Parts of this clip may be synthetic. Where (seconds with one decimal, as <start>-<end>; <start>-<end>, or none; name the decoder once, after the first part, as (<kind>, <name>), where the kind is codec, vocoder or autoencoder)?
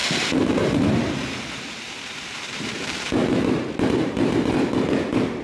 0.0-5.4 (vocoder, BigVGAN v2)